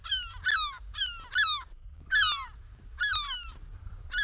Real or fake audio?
real